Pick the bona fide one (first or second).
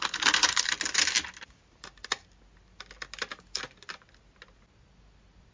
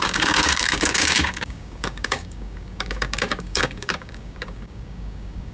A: first